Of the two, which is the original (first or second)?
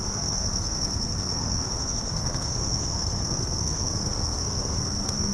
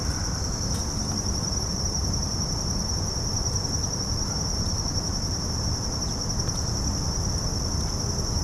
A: second